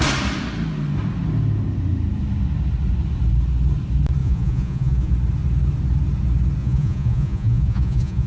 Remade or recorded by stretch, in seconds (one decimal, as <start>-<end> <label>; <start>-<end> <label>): 0.0-4.2 recorded; 4.2-5.1 remade; 5.1-6.6 recorded; 6.6-8.3 remade